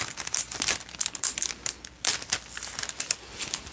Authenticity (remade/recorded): recorded